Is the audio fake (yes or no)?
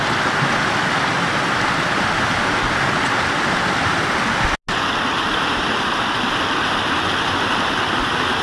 no